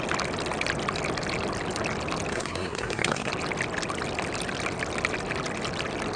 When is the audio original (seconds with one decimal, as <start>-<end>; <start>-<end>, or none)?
0.0-2.3; 3.3-6.2